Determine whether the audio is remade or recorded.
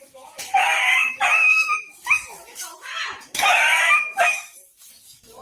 remade